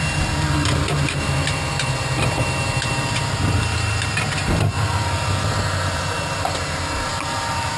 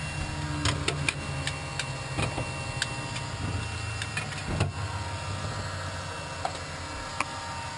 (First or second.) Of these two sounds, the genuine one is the second